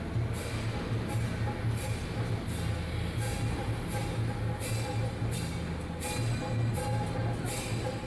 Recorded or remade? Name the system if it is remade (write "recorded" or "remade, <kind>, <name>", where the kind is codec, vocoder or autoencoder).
recorded